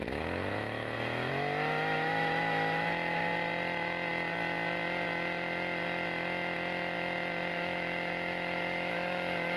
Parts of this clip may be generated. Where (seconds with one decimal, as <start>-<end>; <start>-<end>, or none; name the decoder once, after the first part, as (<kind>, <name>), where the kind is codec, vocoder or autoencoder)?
0.0-3.3 (autoencoder, DAC-VAE); 7.5-9.6